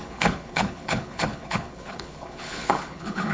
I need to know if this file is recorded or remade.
remade